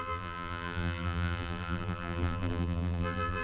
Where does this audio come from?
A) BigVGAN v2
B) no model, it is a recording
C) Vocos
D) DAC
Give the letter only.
A